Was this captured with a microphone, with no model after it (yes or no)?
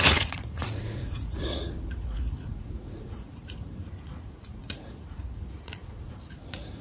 no